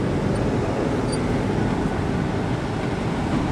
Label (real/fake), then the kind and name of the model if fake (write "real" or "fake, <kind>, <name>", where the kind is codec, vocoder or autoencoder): real